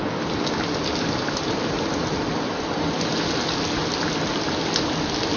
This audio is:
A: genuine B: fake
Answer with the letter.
A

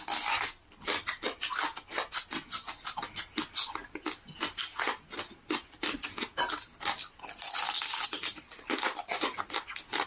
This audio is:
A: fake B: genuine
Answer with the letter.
B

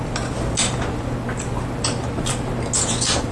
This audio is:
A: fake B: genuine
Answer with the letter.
B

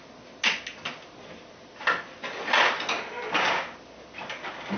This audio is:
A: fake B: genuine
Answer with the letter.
B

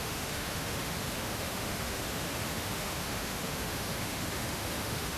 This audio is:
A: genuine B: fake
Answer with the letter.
B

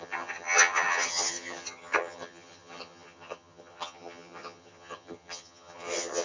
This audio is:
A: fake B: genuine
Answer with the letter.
A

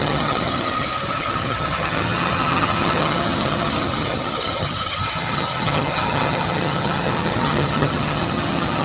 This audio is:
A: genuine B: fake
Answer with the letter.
B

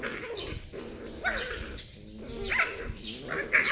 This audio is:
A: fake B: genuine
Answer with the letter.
B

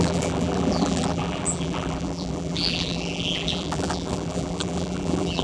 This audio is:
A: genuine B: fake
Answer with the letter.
B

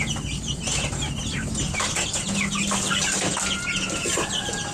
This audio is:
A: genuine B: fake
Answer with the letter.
A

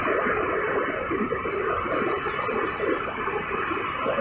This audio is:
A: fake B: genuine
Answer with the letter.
B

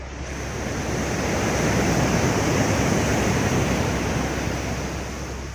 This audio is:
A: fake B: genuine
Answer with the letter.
B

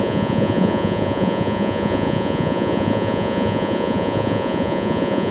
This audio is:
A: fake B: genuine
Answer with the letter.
A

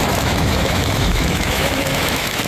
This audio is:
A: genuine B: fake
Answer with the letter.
B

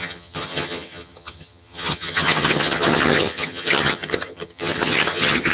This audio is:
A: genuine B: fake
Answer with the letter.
B